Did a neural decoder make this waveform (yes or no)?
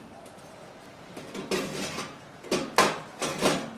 no